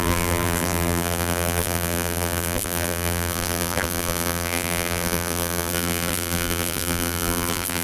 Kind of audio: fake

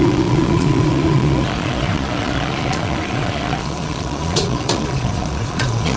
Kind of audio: fake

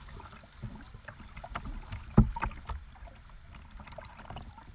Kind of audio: real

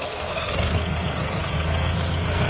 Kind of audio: fake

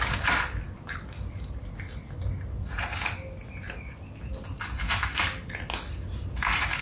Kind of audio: real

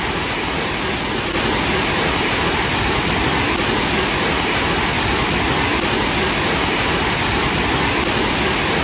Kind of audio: real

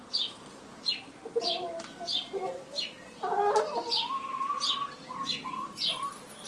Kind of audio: real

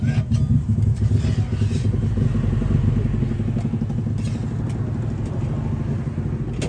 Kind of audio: real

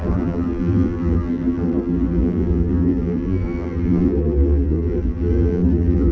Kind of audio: fake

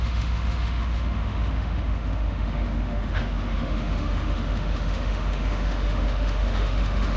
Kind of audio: fake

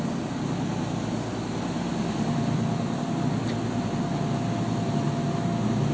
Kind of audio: real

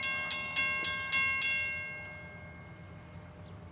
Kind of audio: real